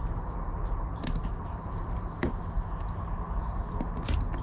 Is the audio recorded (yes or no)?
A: yes